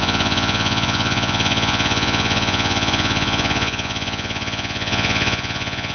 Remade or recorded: remade